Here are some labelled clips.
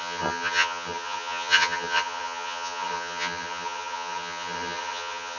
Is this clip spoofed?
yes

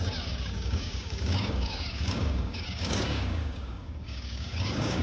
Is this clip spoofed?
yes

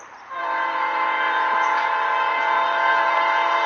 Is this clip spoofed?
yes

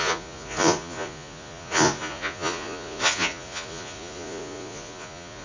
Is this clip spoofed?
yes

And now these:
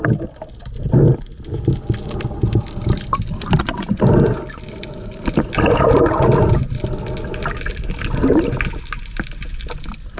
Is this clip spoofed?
no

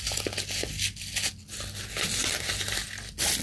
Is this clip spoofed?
no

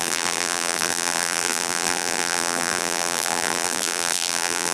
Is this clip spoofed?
yes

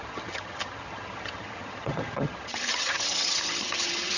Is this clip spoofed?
yes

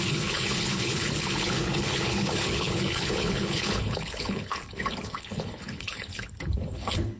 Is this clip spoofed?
yes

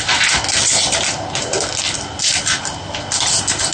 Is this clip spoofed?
no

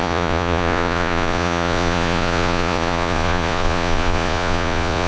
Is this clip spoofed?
yes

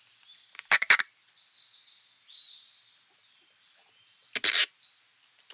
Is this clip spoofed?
no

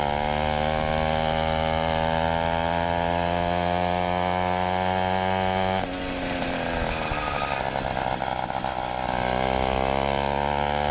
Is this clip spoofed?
no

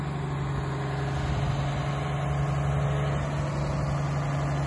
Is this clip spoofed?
no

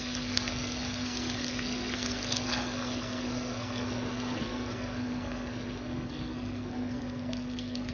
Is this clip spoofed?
yes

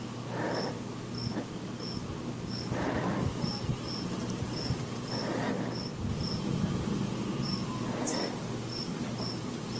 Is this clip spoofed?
no